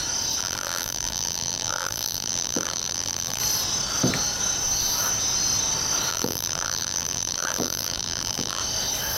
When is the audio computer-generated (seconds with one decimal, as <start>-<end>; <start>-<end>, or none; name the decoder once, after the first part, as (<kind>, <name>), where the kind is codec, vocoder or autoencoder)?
0.4-3.4 (vocoder, BigVGAN v2); 6.1-8.6